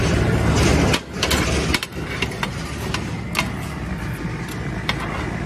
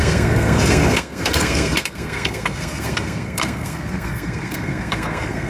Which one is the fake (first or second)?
second